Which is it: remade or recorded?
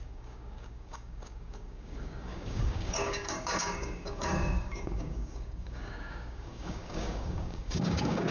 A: remade